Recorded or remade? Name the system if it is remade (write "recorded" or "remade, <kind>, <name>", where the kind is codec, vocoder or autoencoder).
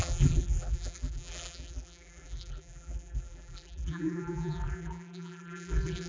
remade, vocoder, BigVGAN v2